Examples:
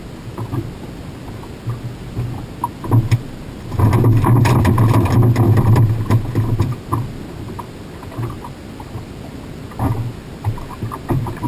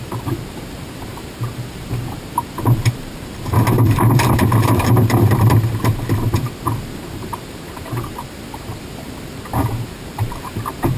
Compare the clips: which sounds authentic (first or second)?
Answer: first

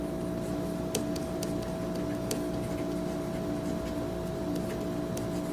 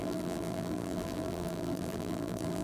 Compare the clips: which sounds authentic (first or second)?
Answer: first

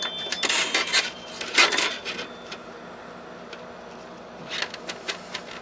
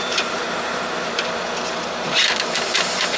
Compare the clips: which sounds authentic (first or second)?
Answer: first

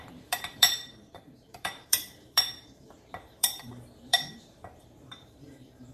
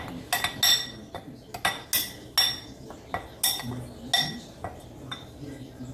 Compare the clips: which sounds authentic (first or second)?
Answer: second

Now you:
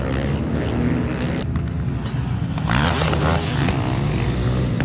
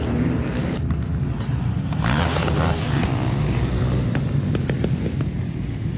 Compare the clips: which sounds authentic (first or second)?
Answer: first